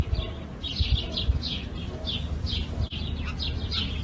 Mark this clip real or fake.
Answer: real